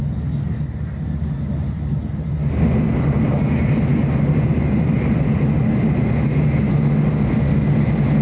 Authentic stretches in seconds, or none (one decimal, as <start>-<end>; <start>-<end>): 0.0-8.2